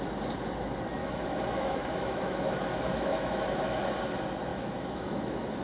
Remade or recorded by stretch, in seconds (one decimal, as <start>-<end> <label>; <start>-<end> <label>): 0.0-1.0 recorded; 1.0-3.8 remade; 3.8-4.5 recorded; 4.5-5.6 remade